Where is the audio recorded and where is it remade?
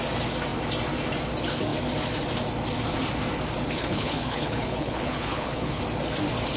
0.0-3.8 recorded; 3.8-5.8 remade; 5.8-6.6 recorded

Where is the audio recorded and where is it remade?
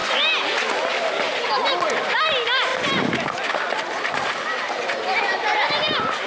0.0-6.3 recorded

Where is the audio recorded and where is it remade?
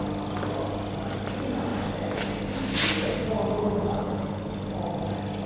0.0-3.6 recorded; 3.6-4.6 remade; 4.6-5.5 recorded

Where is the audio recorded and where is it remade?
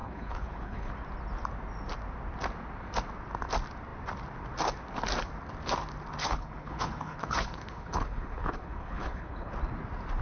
0.0-0.9 remade; 0.9-6.2 recorded; 6.2-9.5 remade; 9.5-10.2 recorded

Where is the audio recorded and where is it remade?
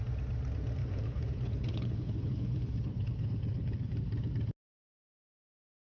0.0-0.8 recorded; 0.8-4.0 remade; 4.0-5.9 recorded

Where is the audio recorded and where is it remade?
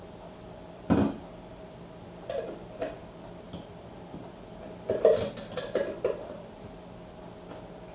0.0-7.9 recorded